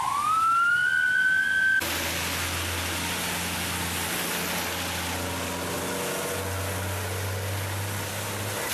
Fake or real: real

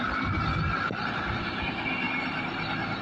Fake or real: real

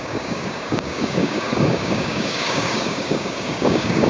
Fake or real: fake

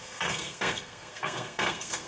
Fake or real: fake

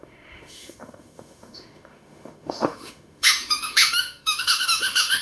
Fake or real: fake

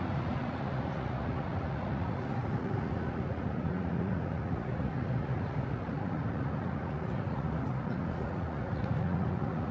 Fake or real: fake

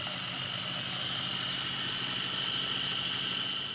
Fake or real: real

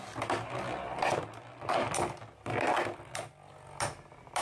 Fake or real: real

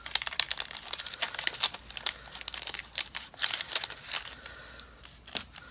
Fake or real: real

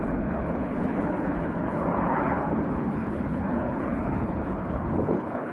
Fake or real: fake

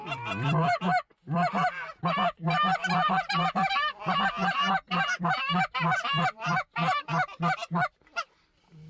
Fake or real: fake